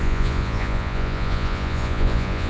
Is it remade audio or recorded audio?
remade